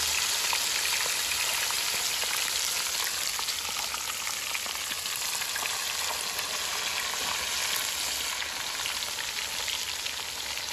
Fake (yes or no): no